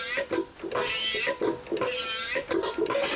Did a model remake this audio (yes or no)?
no